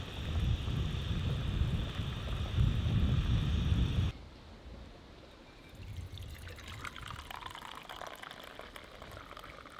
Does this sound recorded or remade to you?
recorded